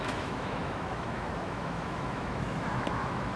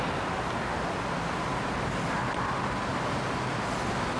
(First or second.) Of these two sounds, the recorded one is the second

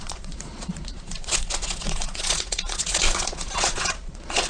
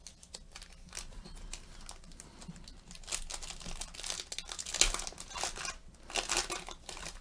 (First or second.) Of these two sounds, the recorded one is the second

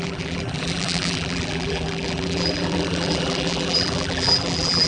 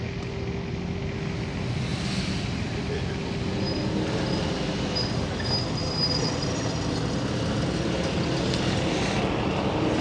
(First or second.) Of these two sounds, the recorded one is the second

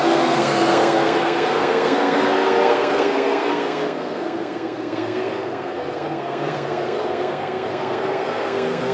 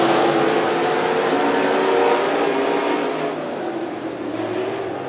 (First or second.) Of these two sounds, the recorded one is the second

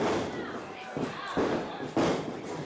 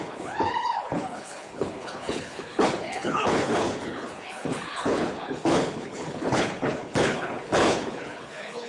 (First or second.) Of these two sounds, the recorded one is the first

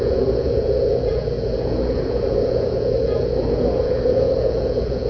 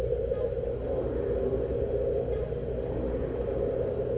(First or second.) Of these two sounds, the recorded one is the second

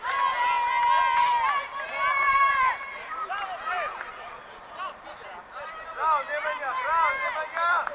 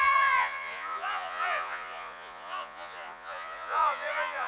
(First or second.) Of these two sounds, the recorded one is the first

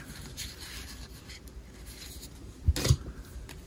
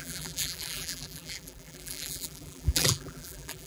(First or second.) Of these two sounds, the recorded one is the first